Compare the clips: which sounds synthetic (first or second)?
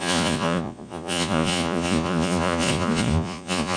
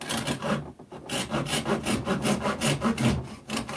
first